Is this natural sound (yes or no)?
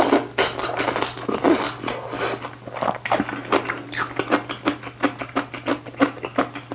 yes